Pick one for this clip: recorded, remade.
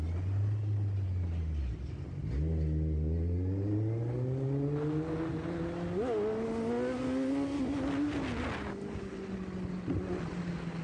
recorded